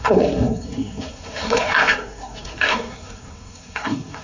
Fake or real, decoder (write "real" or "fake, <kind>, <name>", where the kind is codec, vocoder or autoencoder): fake, codec, SNAC